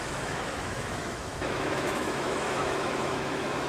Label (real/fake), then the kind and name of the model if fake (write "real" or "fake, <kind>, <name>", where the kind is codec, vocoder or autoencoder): fake, autoencoder, DAC-VAE